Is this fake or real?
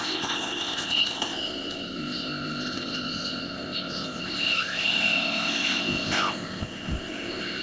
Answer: fake